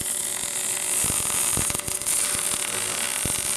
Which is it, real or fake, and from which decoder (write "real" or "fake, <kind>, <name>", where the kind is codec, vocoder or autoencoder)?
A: real